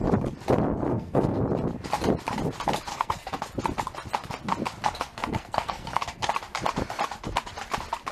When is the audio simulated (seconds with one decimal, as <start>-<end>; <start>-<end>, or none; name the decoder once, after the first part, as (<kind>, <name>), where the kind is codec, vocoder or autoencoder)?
0.9-1.4 (codec, SNAC); 2.9-3.4; 5.1-6.3